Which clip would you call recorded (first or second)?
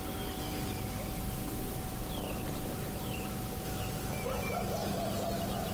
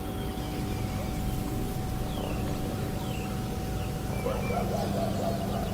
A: second